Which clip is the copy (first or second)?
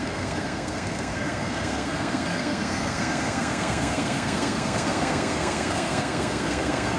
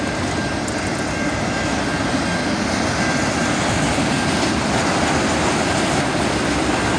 first